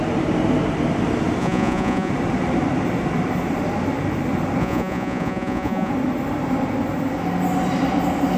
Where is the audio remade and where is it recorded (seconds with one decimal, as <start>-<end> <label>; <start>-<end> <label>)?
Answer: 0.0-1.4 recorded; 1.4-2.1 remade; 2.1-4.6 recorded; 4.6-5.9 remade; 5.9-8.4 recorded

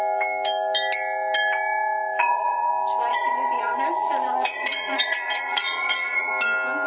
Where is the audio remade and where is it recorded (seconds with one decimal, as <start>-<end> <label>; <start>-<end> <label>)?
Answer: 0.0-2.2 recorded; 2.2-2.7 remade; 2.7-3.1 recorded; 3.1-6.3 remade; 6.3-6.9 recorded

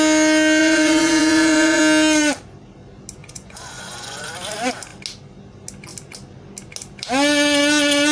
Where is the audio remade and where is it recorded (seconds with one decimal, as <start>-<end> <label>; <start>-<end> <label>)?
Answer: 0.0-0.6 recorded; 0.6-1.8 remade; 1.8-3.2 recorded; 3.2-4.3 remade; 4.3-8.1 recorded

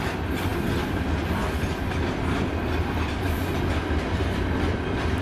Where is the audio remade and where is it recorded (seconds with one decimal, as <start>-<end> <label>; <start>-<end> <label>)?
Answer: 0.0-5.2 recorded

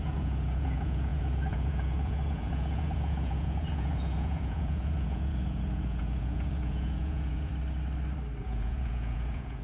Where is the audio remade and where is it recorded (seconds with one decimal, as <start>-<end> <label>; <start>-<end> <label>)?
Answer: 0.0-7.5 remade; 7.5-8.4 recorded; 8.4-9.6 remade